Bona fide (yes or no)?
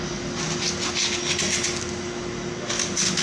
yes